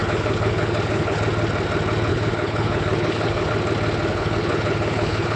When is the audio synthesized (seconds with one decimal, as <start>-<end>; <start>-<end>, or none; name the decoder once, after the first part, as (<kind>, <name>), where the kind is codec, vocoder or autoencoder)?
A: 0.0-1.2 (codec, HILCodec); 2.1-3.5; 4.1-5.4